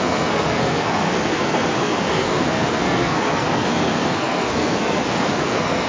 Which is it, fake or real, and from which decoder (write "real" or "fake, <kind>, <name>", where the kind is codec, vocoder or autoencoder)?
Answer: fake, codec, SNAC